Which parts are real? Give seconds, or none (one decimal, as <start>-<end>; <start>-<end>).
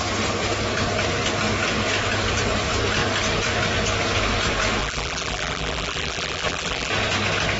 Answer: 0.0-4.8; 6.9-7.6